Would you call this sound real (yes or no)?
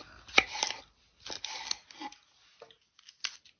yes